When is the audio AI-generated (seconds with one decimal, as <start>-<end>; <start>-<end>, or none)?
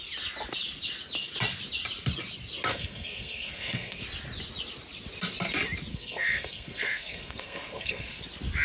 2.7-4.0; 5.9-8.2